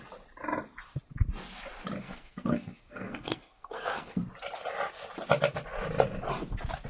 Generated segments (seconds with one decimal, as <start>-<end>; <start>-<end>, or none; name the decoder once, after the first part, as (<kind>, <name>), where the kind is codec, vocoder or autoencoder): 2.0-4.2 (codec, SNAC)

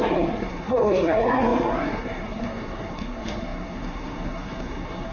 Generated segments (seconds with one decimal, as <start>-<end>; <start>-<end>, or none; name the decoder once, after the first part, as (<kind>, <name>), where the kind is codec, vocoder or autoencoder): 0.0-5.1 (codec, SNAC)

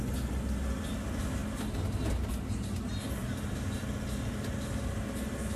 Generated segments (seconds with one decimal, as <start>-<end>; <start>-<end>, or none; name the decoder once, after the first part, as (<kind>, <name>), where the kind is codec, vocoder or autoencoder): none